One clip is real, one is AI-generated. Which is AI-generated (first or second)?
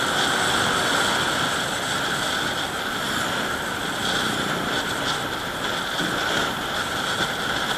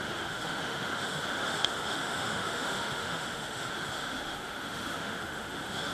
second